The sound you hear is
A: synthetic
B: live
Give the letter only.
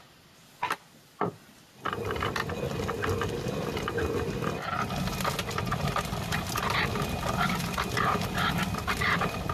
B